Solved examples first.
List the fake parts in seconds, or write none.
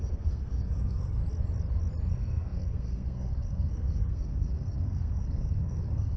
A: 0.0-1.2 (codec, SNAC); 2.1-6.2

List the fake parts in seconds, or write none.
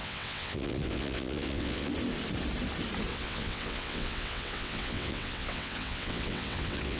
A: 0.0-1.9 (vocoder, WaveNeXt); 3.1-7.0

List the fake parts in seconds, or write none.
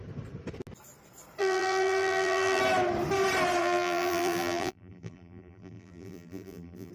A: 1.4-2.6 (vocoder, BigVGAN v2); 3.6-6.9